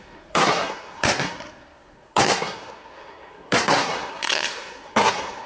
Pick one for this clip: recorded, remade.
remade